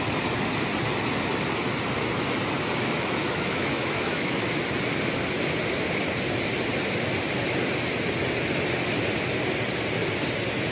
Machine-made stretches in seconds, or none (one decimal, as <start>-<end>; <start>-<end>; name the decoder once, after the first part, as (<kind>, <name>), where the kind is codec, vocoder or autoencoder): 2.8-4.6 (autoencoder, DAC-VAE)